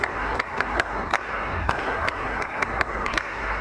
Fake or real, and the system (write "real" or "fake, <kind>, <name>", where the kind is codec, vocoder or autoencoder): fake, codec, SNAC